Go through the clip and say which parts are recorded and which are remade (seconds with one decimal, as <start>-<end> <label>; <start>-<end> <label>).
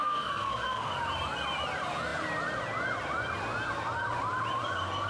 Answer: 0.0-0.9 remade; 0.9-5.1 recorded